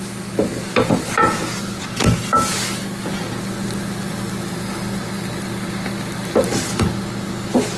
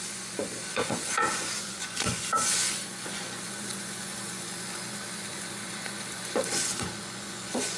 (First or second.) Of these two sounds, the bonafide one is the first